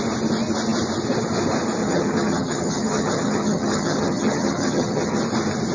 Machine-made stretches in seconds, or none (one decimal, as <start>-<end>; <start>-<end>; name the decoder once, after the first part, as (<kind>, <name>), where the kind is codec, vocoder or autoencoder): 1.8-5.2 (vocoder, HiFi-GAN)